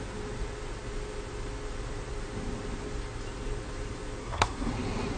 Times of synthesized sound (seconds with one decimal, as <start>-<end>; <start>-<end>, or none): 4.2-4.7

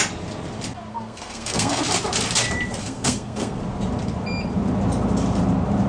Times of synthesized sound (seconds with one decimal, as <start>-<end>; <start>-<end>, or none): 0.9-1.8; 2.8-3.6

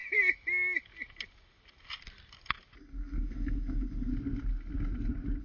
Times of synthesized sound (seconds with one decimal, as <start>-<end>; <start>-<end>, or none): 2.8-4.1

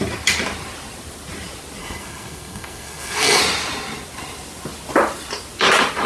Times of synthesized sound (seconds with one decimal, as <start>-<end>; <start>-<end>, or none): 1.8-3.4

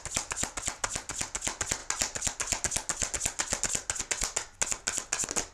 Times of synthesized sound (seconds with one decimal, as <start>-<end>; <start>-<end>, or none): none

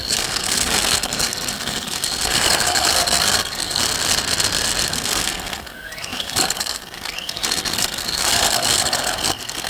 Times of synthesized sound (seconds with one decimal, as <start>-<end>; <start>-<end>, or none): 0.0-3.8; 4.9-9.7

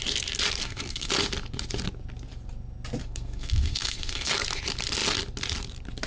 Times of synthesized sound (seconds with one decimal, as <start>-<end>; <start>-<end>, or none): 0.6-1.1; 3.0-4.3